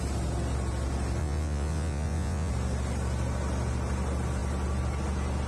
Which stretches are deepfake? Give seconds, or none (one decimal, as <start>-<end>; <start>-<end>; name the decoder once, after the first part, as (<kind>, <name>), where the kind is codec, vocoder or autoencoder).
1.2-2.5 (vocoder, Vocos)

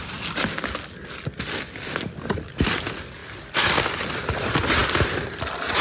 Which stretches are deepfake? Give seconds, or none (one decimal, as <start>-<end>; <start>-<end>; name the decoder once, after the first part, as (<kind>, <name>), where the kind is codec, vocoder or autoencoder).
none

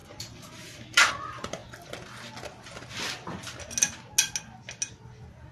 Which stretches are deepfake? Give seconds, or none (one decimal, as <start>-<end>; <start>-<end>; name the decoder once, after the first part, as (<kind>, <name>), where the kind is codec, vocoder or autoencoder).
0.0-1.1 (vocoder, BigVGAN v2)

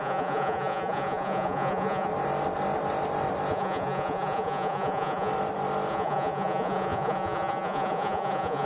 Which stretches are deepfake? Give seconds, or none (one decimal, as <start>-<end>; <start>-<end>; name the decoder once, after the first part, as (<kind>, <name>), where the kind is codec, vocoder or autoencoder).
0.0-2.1 (vocoder, Vocos); 3.5-5.3; 5.9-8.7